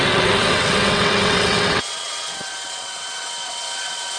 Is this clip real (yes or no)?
no